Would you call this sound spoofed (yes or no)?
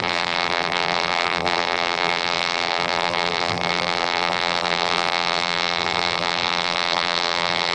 yes